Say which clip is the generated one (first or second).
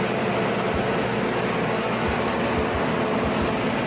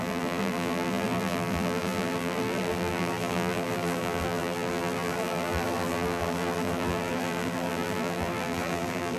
second